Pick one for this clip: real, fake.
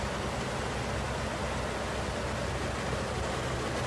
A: real